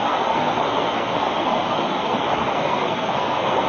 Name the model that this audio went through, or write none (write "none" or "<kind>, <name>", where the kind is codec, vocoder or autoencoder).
codec, SNAC